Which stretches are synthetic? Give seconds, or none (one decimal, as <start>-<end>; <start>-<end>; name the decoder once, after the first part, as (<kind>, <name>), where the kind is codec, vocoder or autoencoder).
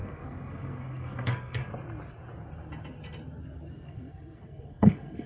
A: 0.0-1.6 (codec, SNAC); 3.7-5.3